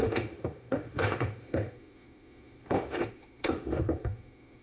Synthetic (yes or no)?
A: yes